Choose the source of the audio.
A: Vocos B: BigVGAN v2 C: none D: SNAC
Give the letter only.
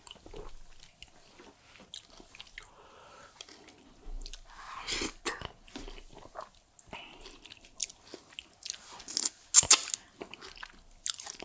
C